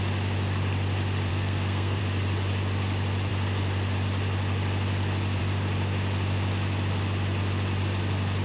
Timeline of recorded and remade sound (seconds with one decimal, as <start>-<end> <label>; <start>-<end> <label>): 0.0-1.3 recorded; 1.3-2.0 remade; 2.0-8.4 recorded

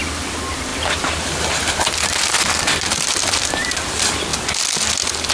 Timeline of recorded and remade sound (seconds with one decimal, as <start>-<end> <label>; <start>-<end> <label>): 0.0-0.7 recorded; 0.7-3.9 remade; 3.9-5.3 recorded